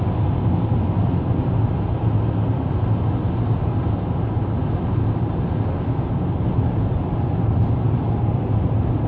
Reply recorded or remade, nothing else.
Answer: recorded